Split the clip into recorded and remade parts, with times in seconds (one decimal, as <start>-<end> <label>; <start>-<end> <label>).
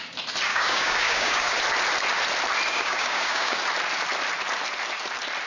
0.0-0.5 recorded; 0.5-1.6 remade; 1.6-2.7 recorded; 2.7-3.6 remade; 3.6-5.5 recorded